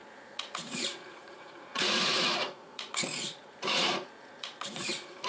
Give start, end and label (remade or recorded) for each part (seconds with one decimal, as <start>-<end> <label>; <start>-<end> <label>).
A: 0.0-5.3 remade